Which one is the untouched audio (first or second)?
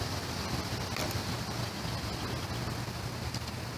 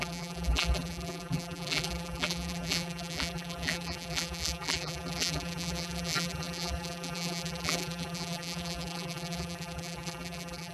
first